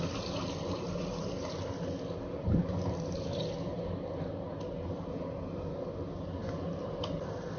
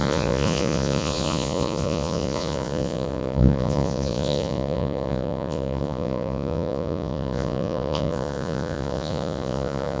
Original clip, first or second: first